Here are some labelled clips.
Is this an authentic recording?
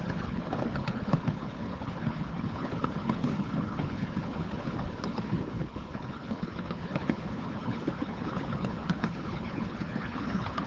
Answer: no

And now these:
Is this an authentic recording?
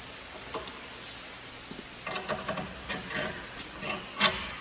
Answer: yes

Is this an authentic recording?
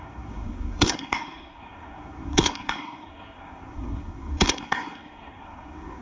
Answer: no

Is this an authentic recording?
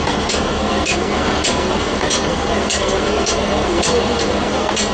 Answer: no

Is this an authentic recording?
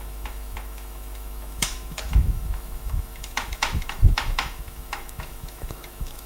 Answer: no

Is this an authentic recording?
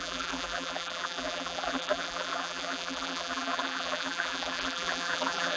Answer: no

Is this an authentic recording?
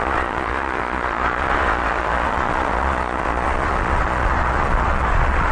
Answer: no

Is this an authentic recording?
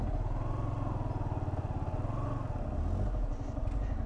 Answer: yes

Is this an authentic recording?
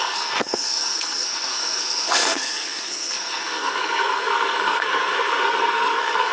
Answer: no